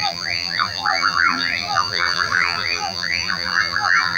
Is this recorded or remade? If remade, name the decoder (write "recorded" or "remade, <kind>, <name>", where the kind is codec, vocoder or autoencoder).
remade, vocoder, BigVGAN v2